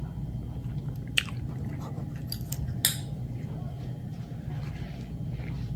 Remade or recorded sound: recorded